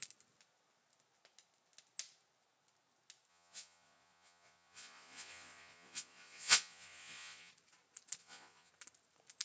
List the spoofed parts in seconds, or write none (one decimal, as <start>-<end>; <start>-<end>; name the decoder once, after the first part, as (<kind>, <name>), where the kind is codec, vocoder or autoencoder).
3.3-7.5 (vocoder, Vocos); 8.2-8.7